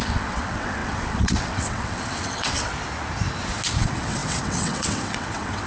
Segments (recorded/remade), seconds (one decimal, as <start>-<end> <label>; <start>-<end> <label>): 0.0-2.7 remade; 2.7-3.8 recorded; 3.8-5.7 remade